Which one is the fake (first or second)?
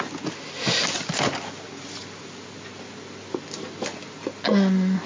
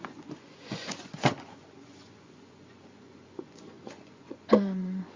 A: second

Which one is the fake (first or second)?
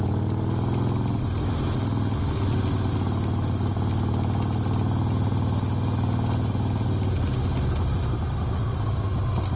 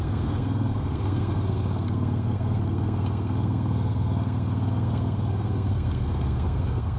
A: second